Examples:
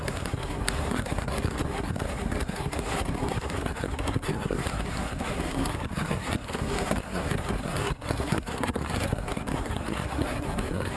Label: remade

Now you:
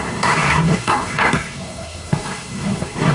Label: remade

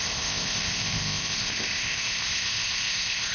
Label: remade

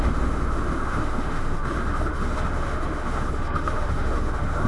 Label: remade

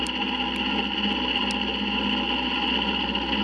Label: recorded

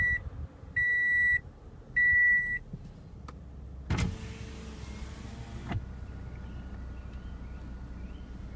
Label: recorded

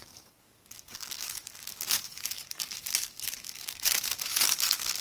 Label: remade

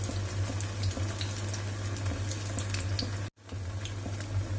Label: recorded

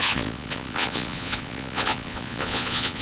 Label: remade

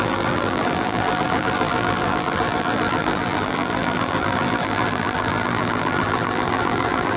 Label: remade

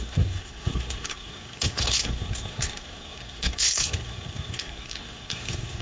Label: remade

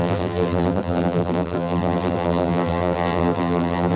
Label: remade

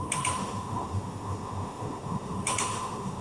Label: remade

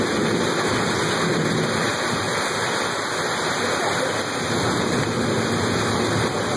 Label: recorded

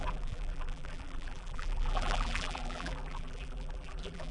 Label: remade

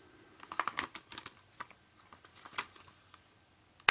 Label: recorded